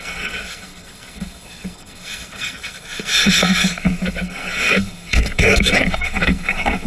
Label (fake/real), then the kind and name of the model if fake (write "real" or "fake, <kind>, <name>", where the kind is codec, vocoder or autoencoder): fake, codec, SNAC